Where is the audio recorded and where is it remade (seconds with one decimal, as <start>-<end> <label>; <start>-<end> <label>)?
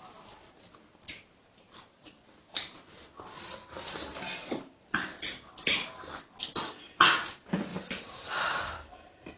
0.0-4.1 recorded; 4.1-5.9 remade; 5.9-9.4 recorded